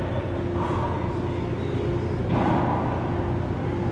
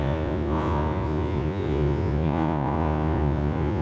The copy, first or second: second